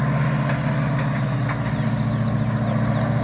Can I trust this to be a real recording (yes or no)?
yes